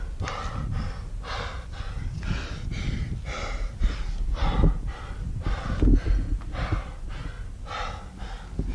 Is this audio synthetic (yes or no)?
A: no